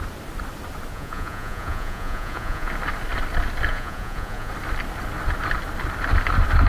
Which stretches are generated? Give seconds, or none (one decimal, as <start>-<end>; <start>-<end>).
0.9-2.7; 3.7-4.5